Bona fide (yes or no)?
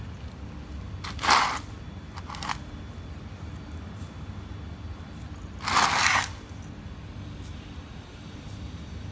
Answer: yes